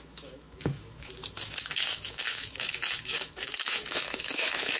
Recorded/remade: remade